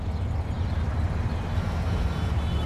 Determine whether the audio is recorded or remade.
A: recorded